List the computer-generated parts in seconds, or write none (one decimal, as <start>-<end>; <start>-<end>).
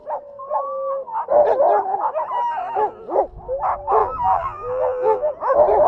4.0-5.3